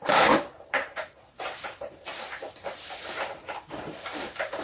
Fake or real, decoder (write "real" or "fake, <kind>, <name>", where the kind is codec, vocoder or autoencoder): fake, vocoder, BigVGAN v2